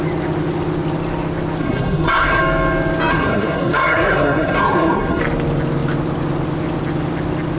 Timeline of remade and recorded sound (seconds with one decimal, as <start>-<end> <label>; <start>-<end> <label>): 0.0-1.6 recorded; 1.6-2.4 remade; 2.4-3.1 recorded; 3.1-5.2 remade; 5.2-7.6 recorded